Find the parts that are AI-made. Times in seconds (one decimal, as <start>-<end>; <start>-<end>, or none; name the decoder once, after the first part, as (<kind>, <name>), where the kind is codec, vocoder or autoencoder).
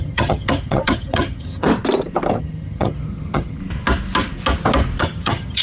0.0-1.7 (vocoder, HiFi-GAN); 2.4-3.6; 5.0-5.6